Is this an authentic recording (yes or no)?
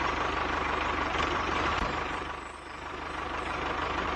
no